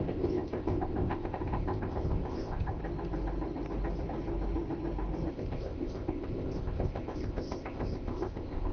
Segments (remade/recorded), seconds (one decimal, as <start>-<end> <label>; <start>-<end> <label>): 0.0-2.8 remade; 2.8-5.3 recorded; 5.3-8.7 remade